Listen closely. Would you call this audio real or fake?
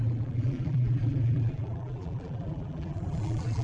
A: fake